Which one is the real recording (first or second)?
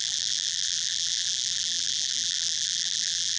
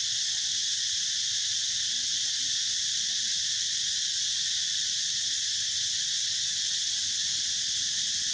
second